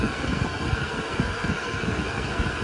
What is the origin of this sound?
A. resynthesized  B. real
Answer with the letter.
A